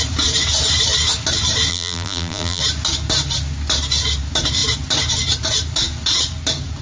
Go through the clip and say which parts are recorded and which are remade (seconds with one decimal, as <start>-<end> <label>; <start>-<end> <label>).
0.0-1.7 recorded; 1.7-2.6 remade; 2.6-6.8 recorded